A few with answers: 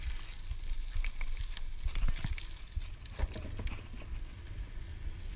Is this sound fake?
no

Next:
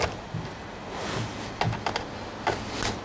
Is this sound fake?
no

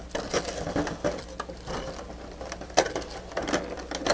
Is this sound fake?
no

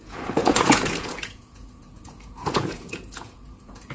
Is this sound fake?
yes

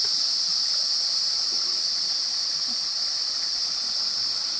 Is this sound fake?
no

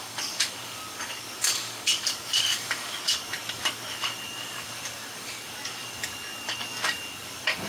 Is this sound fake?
yes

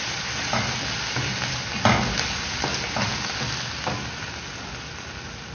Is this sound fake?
no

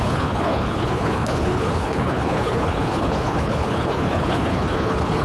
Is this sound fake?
yes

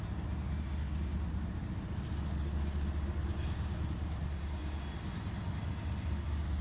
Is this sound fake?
no